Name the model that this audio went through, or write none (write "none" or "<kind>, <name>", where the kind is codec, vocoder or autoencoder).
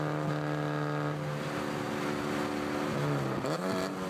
none